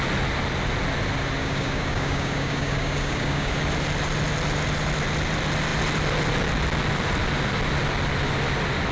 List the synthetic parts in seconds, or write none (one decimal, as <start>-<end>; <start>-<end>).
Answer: 1.4-3.5

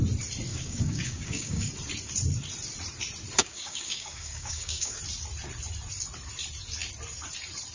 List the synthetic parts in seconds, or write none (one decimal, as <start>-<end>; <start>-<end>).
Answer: 0.5-1.7; 3.4-5.0

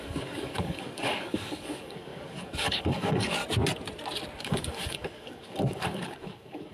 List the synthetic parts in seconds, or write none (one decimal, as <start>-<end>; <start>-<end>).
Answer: 0.0-3.4; 4.4-6.7

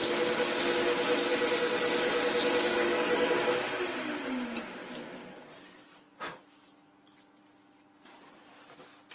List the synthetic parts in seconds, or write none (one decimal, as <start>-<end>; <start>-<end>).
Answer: 2.7-3.3

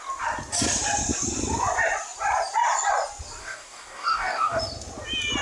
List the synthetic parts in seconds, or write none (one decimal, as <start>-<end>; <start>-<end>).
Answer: 3.4-4.6